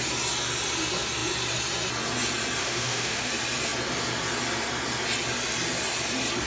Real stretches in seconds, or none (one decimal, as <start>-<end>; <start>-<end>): 0.0-2.6; 3.3-6.5